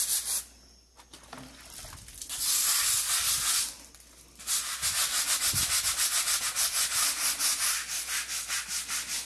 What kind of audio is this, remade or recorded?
recorded